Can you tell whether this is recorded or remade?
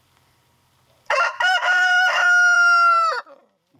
remade